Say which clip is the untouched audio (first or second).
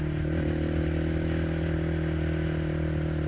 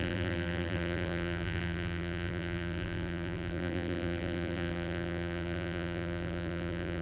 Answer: first